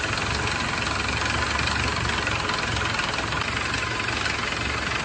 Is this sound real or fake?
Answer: real